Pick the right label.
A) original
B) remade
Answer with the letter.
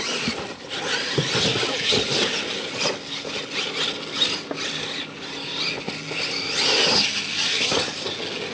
A